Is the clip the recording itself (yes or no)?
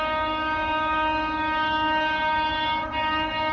no